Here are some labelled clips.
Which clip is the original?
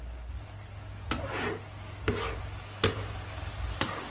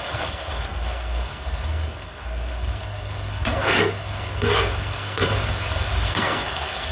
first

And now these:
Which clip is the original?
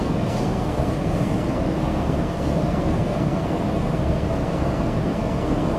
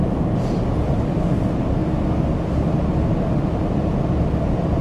second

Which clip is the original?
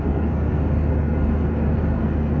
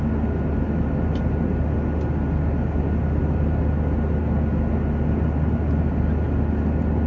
second